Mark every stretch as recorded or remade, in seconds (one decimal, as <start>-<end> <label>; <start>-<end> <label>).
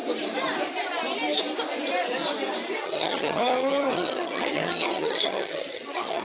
0.0-2.8 recorded; 2.8-6.2 remade